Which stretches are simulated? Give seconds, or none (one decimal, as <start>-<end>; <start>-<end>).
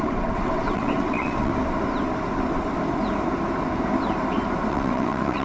0.0-1.5; 4.7-5.4